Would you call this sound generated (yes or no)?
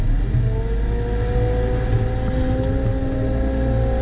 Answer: no